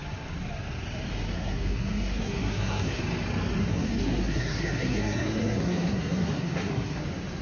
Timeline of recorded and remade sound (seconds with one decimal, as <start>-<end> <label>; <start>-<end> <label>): 0.0-1.1 recorded; 1.1-3.0 remade; 3.0-3.6 recorded; 3.6-7.0 remade; 7.0-7.4 recorded